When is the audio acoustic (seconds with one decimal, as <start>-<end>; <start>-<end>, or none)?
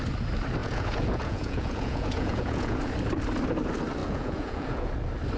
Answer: 0.0-0.6; 2.8-4.0; 4.9-5.4